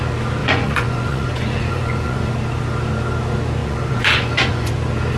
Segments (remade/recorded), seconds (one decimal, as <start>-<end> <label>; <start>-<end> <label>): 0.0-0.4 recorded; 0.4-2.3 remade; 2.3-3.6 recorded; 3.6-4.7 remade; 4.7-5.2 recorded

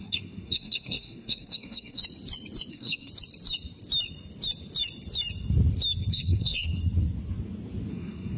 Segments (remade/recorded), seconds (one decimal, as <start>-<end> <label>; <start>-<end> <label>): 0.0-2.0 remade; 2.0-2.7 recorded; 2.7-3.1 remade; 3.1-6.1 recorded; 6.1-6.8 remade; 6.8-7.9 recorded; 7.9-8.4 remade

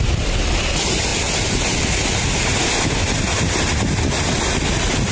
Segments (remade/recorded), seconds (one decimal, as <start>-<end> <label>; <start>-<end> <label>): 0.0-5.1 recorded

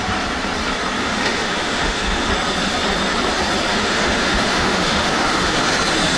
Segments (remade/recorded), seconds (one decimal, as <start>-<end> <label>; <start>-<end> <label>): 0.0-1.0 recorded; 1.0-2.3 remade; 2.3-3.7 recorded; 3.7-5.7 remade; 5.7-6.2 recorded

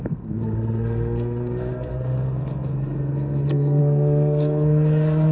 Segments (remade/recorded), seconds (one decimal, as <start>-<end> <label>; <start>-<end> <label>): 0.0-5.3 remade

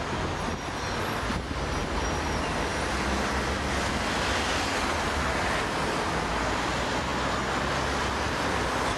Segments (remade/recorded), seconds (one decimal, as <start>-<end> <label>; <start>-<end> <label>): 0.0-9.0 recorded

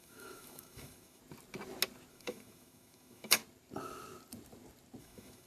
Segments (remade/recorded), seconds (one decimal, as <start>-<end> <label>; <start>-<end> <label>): 0.0-1.2 remade; 1.2-2.1 recorded; 2.1-3.4 remade; 3.4-5.0 recorded; 5.0-5.5 remade

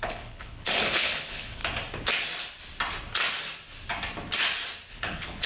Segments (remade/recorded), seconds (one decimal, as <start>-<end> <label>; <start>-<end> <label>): 0.0-1.6 remade; 1.6-4.9 recorded; 4.9-5.5 remade